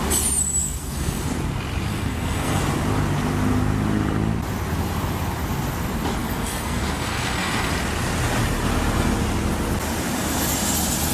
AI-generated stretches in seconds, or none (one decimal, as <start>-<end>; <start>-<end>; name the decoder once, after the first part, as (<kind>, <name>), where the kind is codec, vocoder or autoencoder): 0.6-1.3 (codec, SNAC); 1.9-2.6; 6.2-7.7

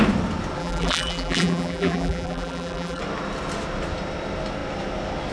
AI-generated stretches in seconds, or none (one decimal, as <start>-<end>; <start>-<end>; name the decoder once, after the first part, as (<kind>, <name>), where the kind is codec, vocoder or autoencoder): 0.6-3.0 (vocoder, BigVGAN v2)

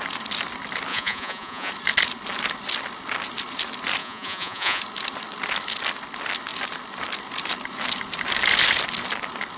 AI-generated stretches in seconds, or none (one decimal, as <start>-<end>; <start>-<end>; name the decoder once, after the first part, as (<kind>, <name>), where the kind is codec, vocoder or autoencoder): 0.9-1.7 (vocoder, Vocos); 4.0-4.8